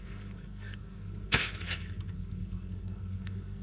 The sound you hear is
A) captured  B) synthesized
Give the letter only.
B